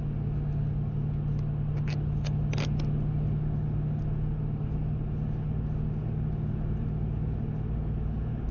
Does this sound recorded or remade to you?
recorded